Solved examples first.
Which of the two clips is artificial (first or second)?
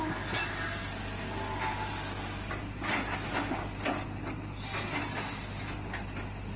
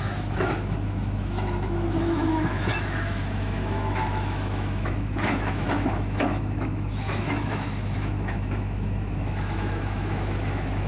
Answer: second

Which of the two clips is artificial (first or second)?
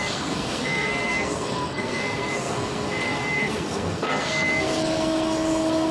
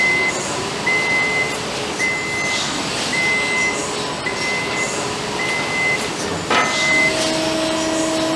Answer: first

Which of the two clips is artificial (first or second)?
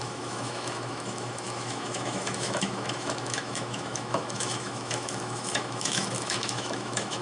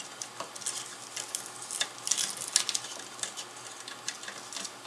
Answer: first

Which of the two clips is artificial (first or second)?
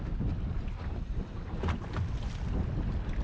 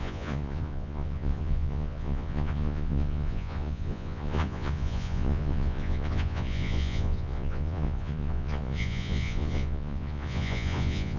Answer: second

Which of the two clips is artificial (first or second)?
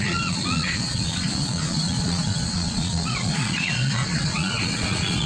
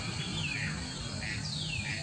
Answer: first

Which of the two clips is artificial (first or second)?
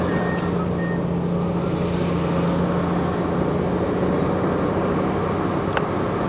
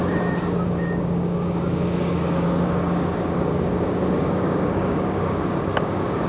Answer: second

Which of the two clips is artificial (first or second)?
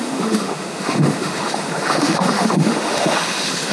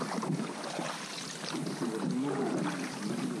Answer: first